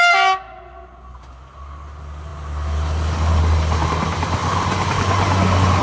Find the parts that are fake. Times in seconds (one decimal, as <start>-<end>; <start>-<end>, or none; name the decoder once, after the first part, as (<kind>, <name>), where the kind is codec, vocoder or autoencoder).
none